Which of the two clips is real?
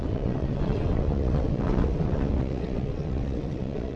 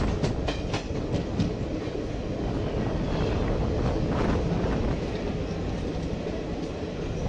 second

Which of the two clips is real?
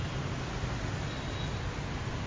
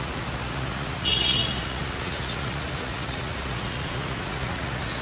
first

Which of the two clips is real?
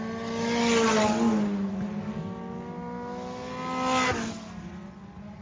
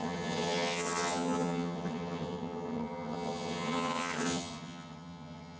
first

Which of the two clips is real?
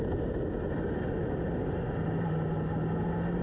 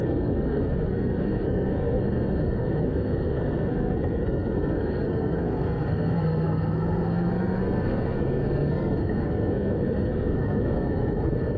first